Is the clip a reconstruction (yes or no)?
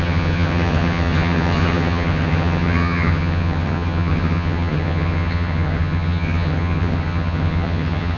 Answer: yes